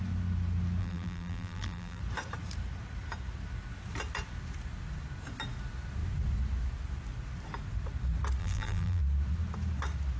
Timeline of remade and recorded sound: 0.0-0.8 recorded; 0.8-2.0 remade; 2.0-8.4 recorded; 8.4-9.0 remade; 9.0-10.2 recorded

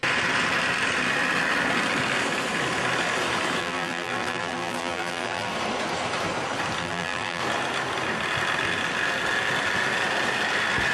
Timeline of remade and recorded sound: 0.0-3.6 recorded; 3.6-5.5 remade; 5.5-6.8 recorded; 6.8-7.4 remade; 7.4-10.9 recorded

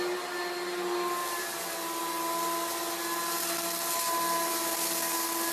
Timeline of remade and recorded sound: 0.0-5.5 recorded

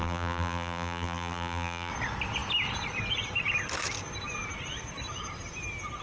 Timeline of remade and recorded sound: 0.0-1.9 remade; 1.9-6.0 recorded

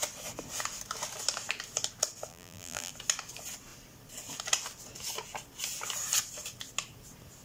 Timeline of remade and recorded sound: 0.0-2.3 recorded; 2.3-2.9 remade; 2.9-7.4 recorded